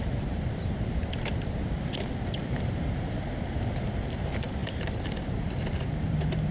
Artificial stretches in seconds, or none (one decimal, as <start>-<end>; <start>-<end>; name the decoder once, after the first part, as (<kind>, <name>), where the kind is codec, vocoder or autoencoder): 0.0-1.0 (vocoder, BigVGAN v2); 2.4-6.5